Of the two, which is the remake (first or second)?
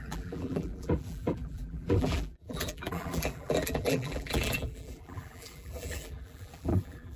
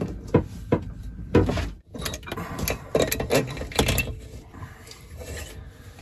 first